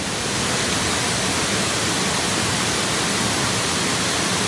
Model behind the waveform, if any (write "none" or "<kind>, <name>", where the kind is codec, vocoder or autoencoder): none